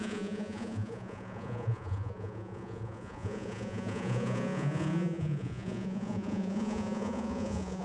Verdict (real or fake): fake